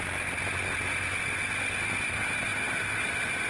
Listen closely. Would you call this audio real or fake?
real